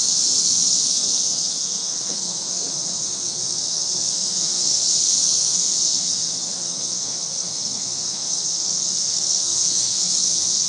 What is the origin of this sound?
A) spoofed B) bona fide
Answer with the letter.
A